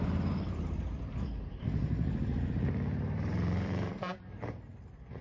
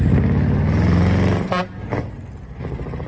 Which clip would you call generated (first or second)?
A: first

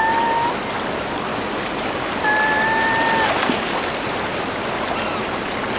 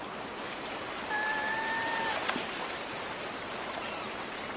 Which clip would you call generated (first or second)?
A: second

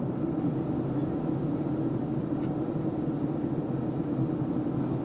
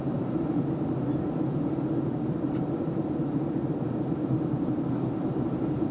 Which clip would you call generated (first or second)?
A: second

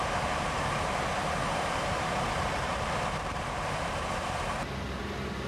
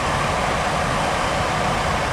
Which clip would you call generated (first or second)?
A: first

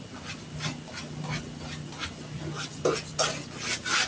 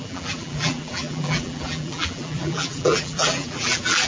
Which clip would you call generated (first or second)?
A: second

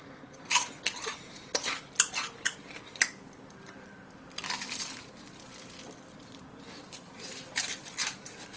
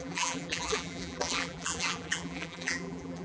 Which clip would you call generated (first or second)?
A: second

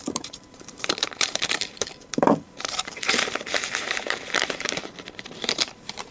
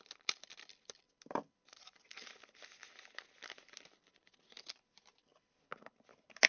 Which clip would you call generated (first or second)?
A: first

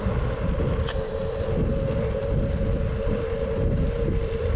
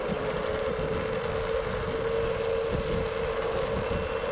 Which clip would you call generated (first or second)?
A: first